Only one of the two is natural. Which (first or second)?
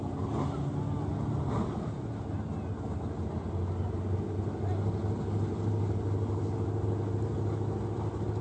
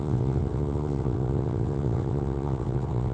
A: first